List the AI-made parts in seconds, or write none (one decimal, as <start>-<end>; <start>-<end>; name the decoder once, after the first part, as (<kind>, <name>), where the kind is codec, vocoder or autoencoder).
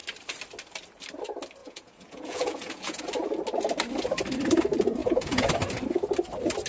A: 1.6-3.0 (vocoder, Vocos); 5.0-5.5